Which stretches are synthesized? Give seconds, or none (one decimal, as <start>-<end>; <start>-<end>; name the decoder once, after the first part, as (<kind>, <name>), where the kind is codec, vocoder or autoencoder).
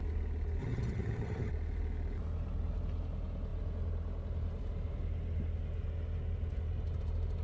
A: 0.6-1.5 (vocoder, HiFi-GAN)